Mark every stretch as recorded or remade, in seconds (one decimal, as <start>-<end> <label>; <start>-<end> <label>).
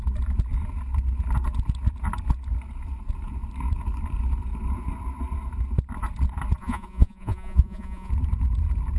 0.0-6.6 recorded; 6.6-8.1 remade; 8.1-9.0 recorded